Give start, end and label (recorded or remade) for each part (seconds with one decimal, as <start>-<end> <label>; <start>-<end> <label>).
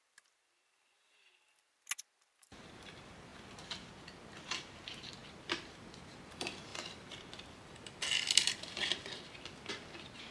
0.0-5.2 recorded; 5.2-5.9 remade; 5.9-6.7 recorded; 6.7-9.7 remade; 9.7-10.3 recorded